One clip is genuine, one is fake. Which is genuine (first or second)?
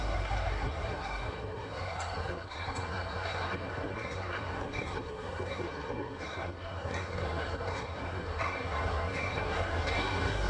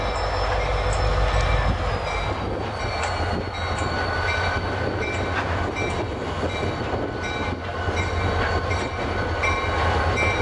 second